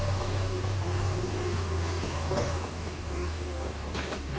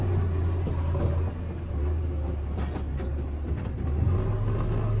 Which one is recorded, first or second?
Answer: second